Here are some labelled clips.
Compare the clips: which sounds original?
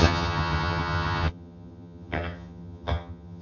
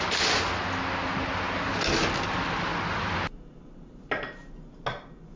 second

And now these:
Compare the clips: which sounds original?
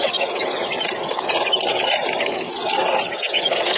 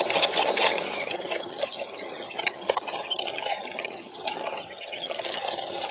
first